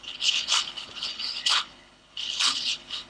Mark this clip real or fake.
fake